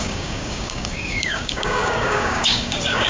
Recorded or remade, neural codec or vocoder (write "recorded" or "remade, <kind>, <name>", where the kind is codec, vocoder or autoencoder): remade, codec, DAC